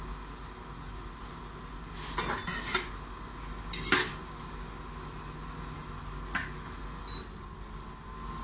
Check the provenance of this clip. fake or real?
real